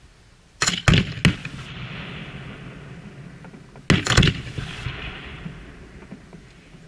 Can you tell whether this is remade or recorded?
recorded